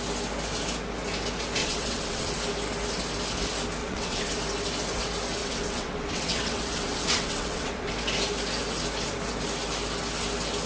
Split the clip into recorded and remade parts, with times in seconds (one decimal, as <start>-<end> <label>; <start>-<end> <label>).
0.0-1.6 recorded; 1.6-2.4 remade; 2.4-3.8 recorded; 3.8-4.4 remade; 4.4-5.4 recorded; 5.4-7.9 remade; 7.9-10.7 recorded